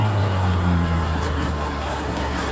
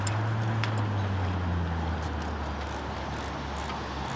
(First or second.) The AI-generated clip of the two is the first